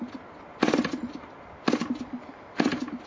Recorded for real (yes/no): yes